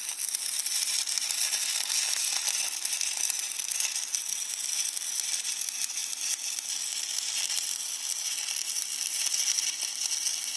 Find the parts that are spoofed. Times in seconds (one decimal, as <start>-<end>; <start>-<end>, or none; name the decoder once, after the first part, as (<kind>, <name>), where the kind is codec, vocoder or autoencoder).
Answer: none